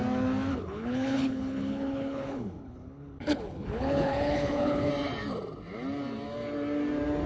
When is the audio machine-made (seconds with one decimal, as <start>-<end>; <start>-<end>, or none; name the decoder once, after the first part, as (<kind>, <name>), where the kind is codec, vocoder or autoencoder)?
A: 0.5-4.9 (codec, HILCodec)